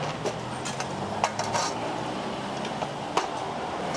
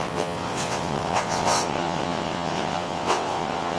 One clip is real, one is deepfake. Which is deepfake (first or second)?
second